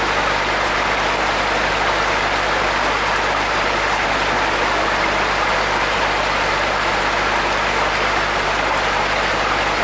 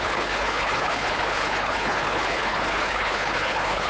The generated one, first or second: second